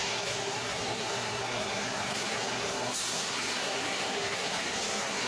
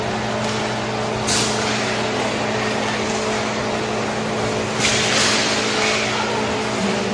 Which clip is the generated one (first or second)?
first